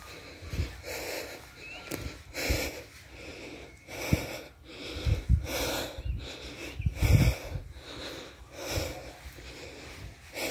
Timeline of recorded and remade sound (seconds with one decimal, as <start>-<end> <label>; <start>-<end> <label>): 0.0-10.5 recorded